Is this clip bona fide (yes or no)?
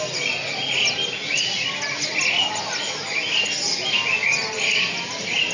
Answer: yes